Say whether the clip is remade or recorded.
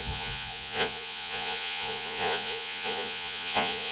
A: remade